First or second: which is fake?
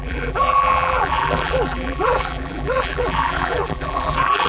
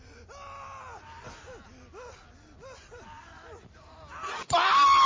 first